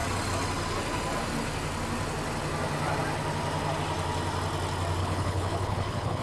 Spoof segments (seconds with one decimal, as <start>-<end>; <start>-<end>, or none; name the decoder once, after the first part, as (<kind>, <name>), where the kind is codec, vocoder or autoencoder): 5.0-6.2 (codec, HILCodec)